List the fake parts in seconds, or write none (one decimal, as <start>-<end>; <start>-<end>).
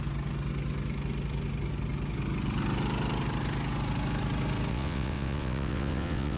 4.7-6.4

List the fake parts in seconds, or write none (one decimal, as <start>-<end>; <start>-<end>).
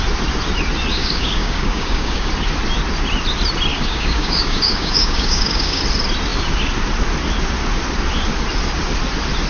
0.9-2.3; 3.7-5.8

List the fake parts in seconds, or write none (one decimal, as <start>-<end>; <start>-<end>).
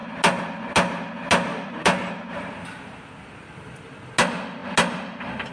1.5-3.1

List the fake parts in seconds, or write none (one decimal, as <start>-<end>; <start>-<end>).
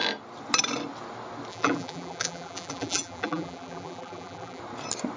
1.5-4.6